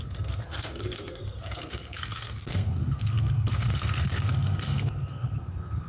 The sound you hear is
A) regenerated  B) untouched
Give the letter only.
A